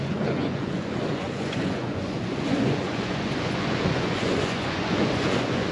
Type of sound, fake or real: fake